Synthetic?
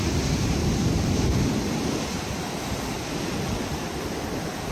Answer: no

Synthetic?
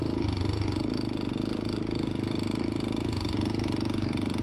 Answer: no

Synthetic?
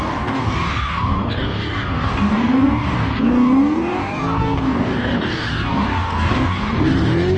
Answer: yes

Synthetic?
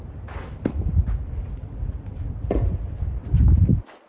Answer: no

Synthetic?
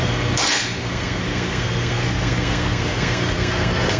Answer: yes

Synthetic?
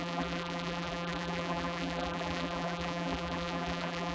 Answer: yes